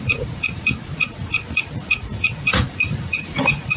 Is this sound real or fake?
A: fake